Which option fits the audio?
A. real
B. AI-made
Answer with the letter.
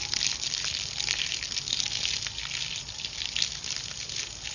A